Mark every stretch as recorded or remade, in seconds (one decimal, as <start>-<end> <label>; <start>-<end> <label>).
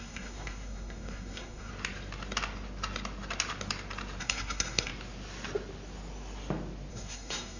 0.0-1.7 remade; 1.7-4.2 recorded; 4.2-4.9 remade; 4.9-6.9 recorded; 6.9-7.6 remade